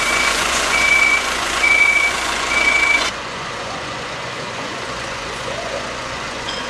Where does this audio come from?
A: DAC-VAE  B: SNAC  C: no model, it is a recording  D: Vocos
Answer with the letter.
D